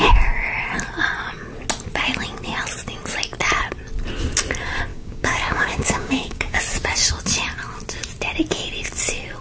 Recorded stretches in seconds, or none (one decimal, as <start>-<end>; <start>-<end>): 0.0-4.9; 6.6-9.4